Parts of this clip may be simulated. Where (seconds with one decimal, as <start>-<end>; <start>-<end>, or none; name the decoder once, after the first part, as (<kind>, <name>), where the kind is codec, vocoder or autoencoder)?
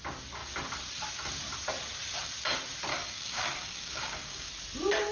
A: 2.9-4.5 (codec, DAC)